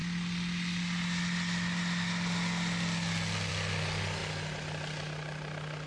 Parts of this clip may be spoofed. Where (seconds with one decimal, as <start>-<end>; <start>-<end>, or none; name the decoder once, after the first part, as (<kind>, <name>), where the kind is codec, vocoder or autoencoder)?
none